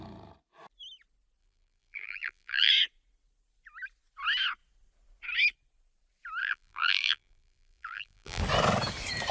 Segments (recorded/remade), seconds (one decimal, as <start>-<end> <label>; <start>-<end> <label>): 0.0-1.4 recorded; 1.4-2.7 remade; 2.7-6.4 recorded; 6.4-8.4 remade; 8.4-9.3 recorded